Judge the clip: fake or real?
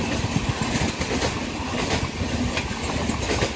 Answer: real